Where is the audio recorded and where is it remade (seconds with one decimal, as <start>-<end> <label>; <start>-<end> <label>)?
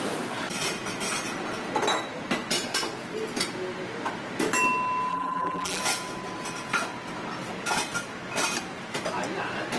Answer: 0.0-5.1 recorded; 5.1-5.8 remade; 5.8-9.8 recorded